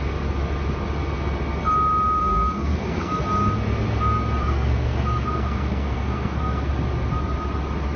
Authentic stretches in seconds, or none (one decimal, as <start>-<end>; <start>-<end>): 0.0-2.2; 3.2-4.4; 6.7-8.0